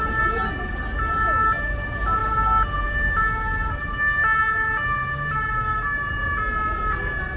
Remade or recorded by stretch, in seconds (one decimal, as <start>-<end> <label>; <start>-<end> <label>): 0.0-7.4 recorded